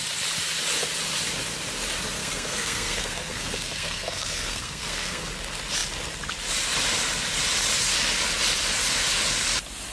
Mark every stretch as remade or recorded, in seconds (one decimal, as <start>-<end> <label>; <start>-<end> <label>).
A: 0.0-2.2 recorded; 2.2-5.3 remade; 5.3-9.9 recorded